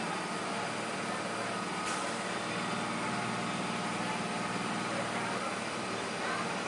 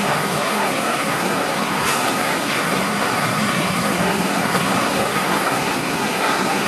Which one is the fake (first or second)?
second